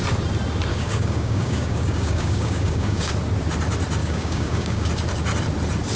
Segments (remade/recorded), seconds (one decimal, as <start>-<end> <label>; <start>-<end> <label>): 0.0-0.7 recorded; 0.7-3.1 remade; 3.1-4.0 recorded; 4.0-4.9 remade; 4.9-6.0 recorded